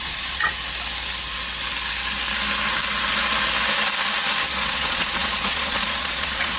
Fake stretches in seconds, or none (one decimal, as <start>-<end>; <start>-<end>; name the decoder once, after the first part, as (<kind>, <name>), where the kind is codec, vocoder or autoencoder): 0.0-0.5 (vocoder, Vocos); 4.5-6.6

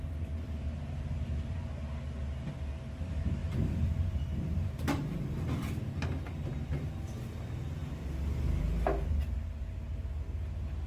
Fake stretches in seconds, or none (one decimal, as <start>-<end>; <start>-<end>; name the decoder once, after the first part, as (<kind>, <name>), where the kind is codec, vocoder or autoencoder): 3.4-6.9 (vocoder, BigVGAN v2)

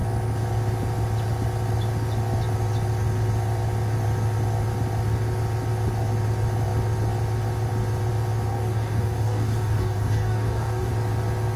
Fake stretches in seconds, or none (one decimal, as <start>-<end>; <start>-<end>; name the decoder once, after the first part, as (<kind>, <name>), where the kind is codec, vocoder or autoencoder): 8.5-10.9 (codec, DAC)

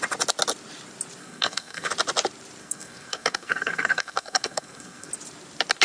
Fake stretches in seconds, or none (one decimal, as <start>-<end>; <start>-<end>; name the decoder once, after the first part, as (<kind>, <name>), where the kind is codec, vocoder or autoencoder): 1.2-1.9 (codec, SNAC); 2.6-5.1

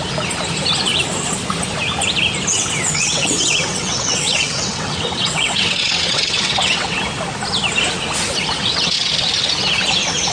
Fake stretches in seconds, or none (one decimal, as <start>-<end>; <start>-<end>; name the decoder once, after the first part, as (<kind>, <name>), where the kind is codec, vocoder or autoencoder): 2.5-7.0 (vocoder, WaveNeXt); 8.6-9.1

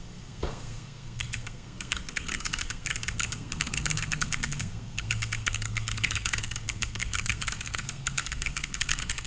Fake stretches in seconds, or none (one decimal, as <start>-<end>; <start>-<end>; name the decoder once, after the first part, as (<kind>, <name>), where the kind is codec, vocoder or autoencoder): 0.0-9.3 (codec, SNAC)